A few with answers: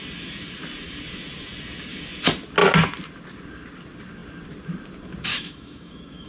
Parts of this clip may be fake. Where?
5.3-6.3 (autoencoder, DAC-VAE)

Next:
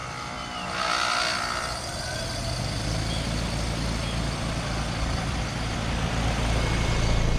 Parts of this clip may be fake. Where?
0.0-2.2 (vocoder, BigVGAN v2)